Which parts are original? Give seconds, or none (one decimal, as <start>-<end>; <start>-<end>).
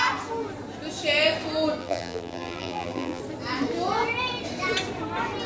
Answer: 0.0-1.8; 3.2-5.5